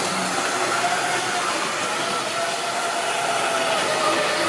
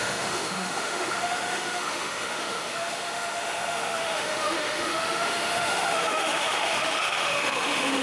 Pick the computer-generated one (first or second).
second